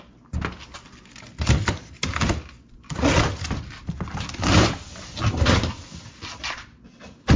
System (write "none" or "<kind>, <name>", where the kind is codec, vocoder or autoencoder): none